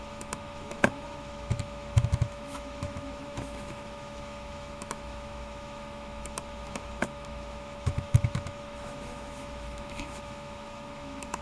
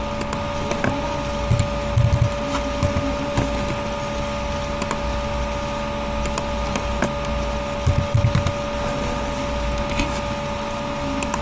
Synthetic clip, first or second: first